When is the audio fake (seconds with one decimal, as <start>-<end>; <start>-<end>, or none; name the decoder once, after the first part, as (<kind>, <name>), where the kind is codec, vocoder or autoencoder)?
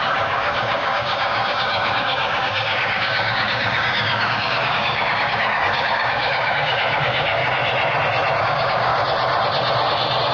0.0-7.4 (codec, DAC); 8.4-8.9